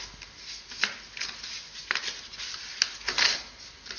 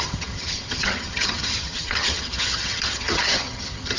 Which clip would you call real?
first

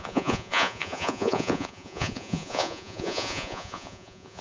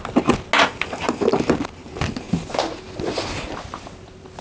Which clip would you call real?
second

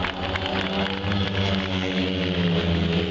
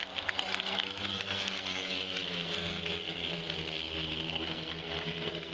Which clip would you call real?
first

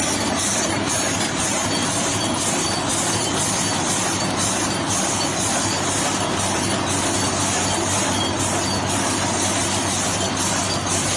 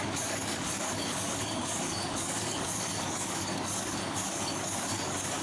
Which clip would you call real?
first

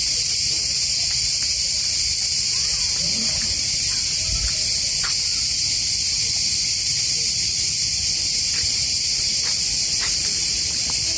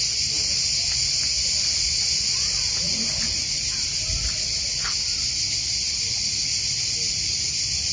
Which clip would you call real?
second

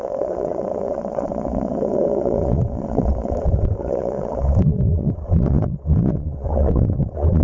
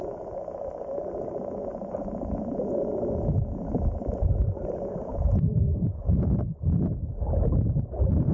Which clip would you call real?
second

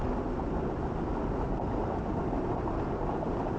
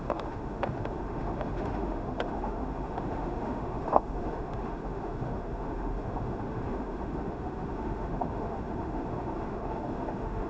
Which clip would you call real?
first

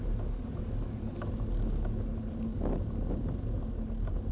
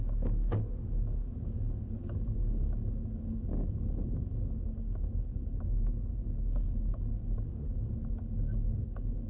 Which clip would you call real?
first